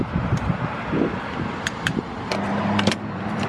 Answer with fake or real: fake